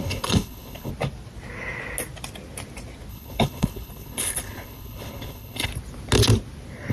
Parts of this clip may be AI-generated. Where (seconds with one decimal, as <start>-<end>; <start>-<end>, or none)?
0.0-0.9; 3.1-5.7